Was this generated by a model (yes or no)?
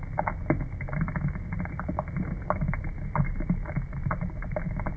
no